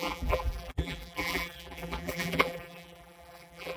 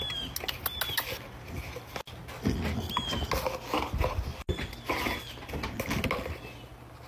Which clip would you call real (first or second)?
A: second